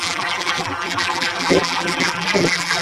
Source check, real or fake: fake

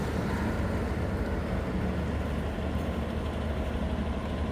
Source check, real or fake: real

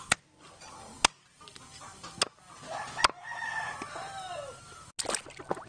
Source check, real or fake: real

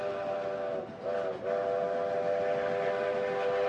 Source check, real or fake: real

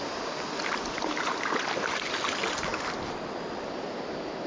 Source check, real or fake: real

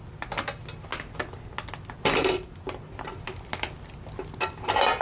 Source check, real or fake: real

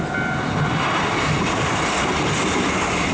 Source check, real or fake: real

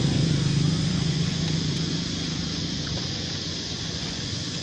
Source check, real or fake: fake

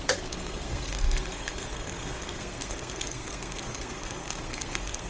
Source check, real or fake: fake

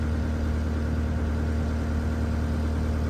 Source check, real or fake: real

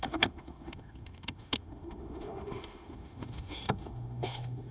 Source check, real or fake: fake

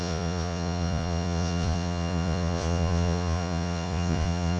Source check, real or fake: fake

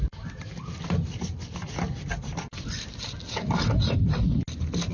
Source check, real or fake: real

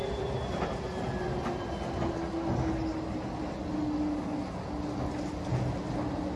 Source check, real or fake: real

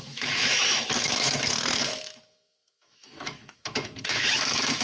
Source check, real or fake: fake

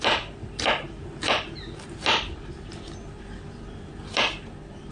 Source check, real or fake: real